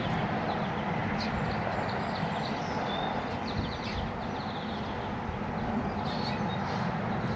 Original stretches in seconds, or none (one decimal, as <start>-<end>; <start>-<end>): 0.0-7.4